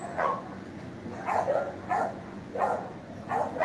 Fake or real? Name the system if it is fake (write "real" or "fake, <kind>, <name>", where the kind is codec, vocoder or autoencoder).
fake, vocoder, Vocos